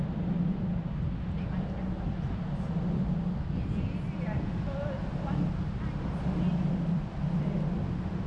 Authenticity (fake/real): real